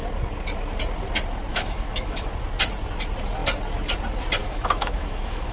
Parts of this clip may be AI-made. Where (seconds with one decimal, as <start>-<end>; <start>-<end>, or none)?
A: 1.5-2.3; 4.4-5.5